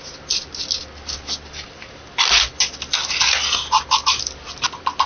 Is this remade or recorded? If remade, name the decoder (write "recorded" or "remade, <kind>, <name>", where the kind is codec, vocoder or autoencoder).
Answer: recorded